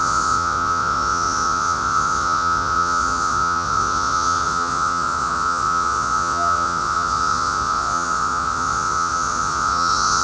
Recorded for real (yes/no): no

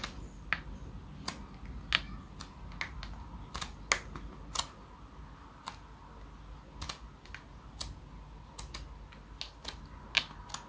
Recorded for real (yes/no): yes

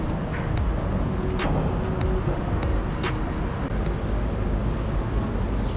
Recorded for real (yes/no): yes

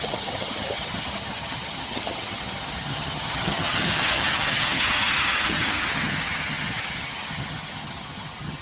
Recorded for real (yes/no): no